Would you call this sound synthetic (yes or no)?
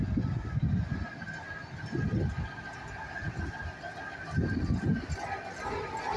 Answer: no